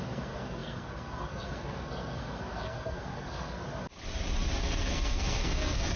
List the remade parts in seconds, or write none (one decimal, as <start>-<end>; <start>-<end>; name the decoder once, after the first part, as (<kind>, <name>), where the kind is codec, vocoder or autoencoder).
0.0-3.6 (codec, SNAC); 4.6-6.0